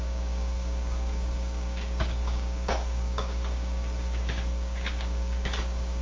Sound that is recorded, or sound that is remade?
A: remade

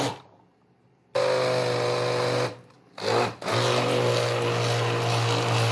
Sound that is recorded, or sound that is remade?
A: recorded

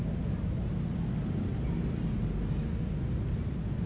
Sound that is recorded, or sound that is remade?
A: recorded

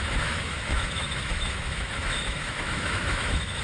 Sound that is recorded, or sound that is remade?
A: remade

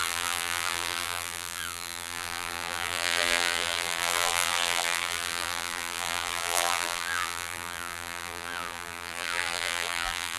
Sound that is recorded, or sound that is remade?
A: remade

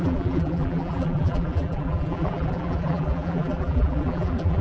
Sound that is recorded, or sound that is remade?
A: remade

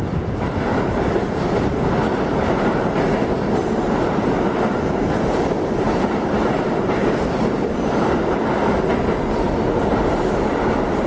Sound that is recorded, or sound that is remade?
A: recorded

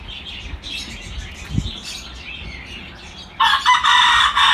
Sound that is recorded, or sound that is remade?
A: recorded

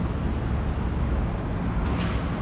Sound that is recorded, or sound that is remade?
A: recorded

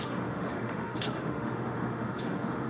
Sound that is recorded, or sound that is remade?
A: remade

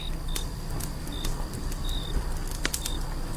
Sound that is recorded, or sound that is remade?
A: recorded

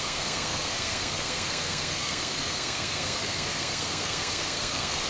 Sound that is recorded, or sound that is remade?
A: remade